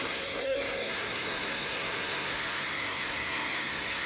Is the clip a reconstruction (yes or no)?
yes